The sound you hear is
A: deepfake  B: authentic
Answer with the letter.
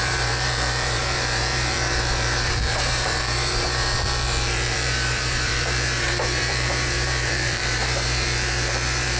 A